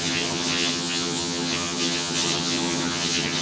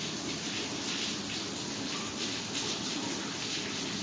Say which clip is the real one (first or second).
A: second